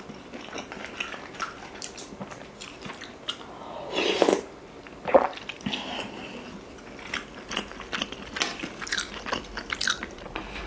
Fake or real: real